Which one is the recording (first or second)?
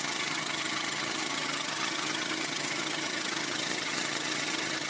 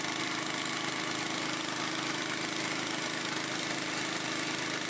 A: second